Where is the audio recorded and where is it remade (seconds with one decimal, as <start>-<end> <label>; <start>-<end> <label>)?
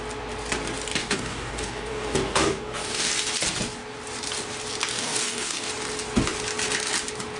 0.0-1.0 recorded; 1.0-3.1 remade; 3.1-4.9 recorded; 4.9-5.7 remade; 5.7-7.4 recorded